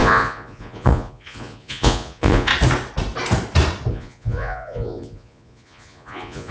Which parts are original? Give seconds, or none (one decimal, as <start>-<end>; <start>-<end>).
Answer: 2.5-3.9

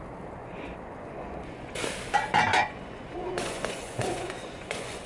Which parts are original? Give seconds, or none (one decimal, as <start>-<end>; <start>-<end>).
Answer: 0.0-0.4; 1.8-2.5